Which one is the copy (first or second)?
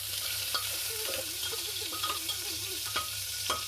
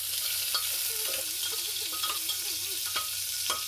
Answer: first